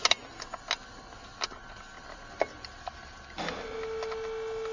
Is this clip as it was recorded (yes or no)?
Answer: yes